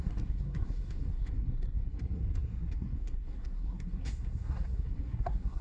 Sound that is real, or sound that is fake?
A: fake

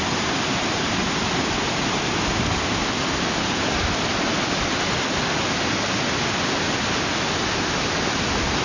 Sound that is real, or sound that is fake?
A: real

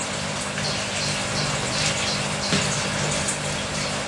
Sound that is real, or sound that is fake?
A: real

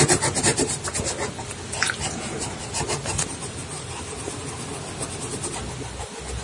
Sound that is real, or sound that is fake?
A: real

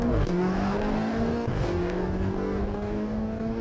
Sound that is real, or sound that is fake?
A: fake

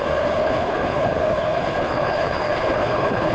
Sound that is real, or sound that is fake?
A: fake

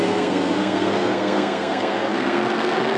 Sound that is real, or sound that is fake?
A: fake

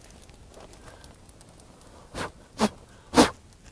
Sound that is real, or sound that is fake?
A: real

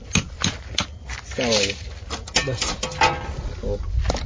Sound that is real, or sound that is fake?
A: real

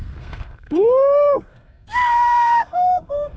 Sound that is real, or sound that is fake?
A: fake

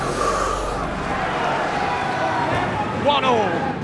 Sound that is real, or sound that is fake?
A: real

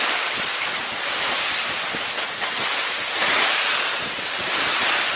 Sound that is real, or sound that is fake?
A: fake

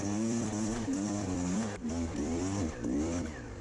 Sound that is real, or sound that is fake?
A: fake